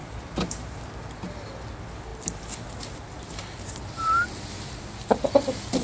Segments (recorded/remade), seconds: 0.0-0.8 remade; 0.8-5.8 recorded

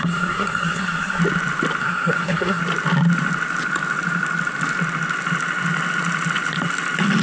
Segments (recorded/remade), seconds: 0.0-1.2 remade; 1.2-1.8 recorded; 1.8-2.6 remade; 2.6-7.2 recorded

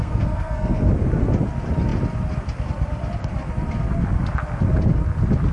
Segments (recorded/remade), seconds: 0.0-0.9 remade; 0.9-5.5 recorded

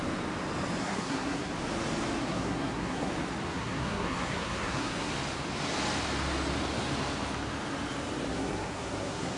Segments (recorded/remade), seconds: 0.0-0.8 recorded; 0.8-1.5 remade; 1.5-2.2 recorded; 2.2-3.1 remade; 3.1-3.5 recorded; 3.5-5.1 remade; 5.1-8.3 recorded; 8.3-9.4 remade